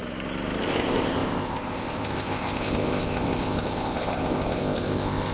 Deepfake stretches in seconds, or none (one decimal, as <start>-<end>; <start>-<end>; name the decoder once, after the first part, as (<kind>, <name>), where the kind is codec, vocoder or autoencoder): 0.6-5.3 (codec, ZipCodec)